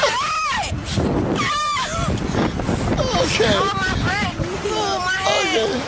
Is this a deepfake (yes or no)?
no